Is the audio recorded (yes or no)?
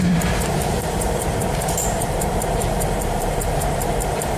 no